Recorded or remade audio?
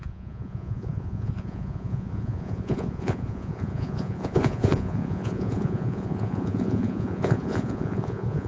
remade